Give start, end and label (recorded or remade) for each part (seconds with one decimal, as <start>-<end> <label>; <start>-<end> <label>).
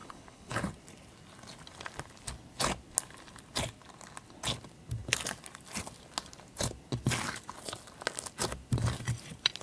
0.0-0.7 remade; 0.7-9.6 recorded